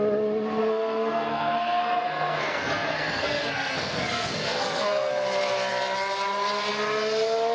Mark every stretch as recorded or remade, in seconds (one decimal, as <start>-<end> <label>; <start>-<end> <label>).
0.0-0.6 recorded; 0.6-5.1 remade; 5.1-7.5 recorded